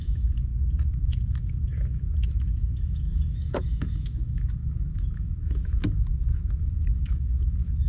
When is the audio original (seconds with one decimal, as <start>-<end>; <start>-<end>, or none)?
0.5-1.0